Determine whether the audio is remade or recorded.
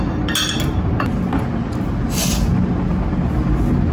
recorded